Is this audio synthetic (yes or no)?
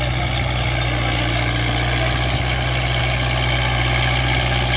no